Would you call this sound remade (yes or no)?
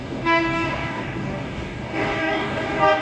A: yes